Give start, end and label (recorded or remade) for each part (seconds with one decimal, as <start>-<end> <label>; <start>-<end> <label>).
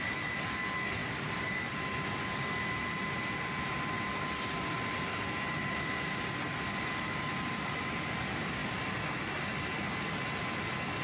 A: 0.0-1.0 recorded; 1.0-1.9 remade; 1.9-8.6 recorded; 8.6-10.4 remade; 10.4-11.0 recorded